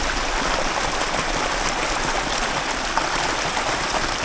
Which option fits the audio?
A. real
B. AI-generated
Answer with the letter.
A